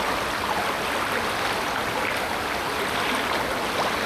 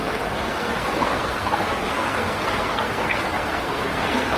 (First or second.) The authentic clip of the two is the first